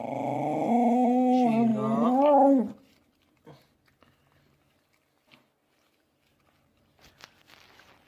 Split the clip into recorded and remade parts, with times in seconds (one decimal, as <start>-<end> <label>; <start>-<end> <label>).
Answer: 0.0-8.1 recorded